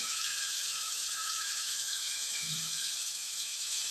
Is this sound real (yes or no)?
no